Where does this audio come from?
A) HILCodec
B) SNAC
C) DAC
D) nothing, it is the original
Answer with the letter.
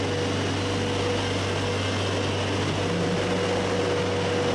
D